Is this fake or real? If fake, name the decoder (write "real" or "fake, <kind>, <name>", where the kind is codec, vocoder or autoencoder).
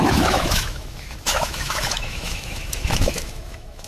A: fake, autoencoder, DAC-VAE